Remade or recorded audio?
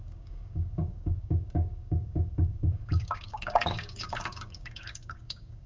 remade